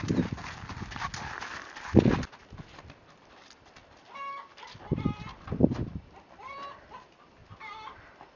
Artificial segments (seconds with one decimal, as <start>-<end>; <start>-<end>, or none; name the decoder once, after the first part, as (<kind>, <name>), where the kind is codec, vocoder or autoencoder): 0.0-2.4 (vocoder, BigVGAN v2); 3.0-3.8; 5.5-7.4